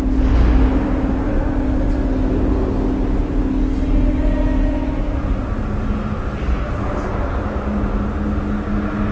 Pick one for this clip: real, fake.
real